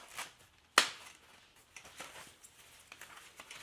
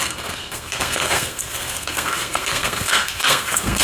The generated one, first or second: second